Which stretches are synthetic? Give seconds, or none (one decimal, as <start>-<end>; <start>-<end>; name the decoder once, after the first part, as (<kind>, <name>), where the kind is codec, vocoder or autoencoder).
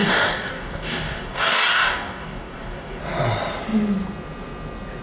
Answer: 0.0-3.0 (codec, DAC)